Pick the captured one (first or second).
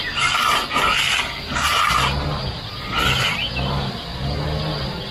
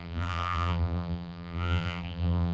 first